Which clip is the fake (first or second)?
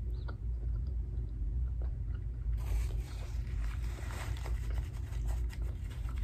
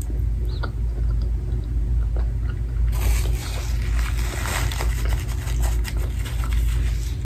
first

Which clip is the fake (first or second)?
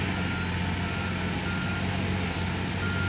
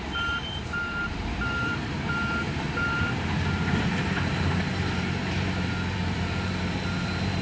second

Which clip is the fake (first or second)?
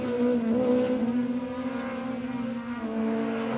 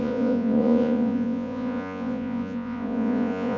second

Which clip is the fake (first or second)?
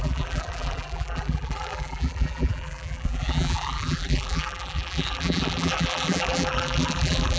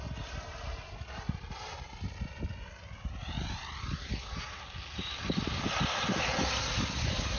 first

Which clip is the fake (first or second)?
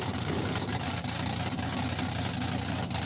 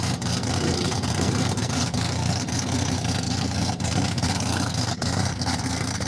second